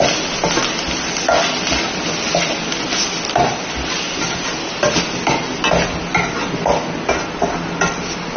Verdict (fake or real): real